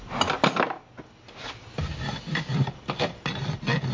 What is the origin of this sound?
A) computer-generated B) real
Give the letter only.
B